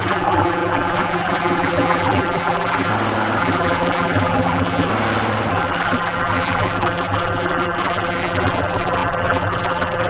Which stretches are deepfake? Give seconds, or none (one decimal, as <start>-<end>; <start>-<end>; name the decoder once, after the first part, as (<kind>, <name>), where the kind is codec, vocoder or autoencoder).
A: 0.0-2.9 (vocoder, BigVGAN v2); 3.4-4.9; 5.5-10.1